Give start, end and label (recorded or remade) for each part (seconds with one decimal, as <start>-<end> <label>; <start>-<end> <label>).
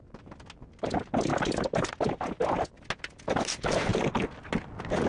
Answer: 0.0-5.1 recorded